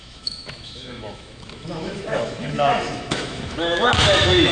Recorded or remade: remade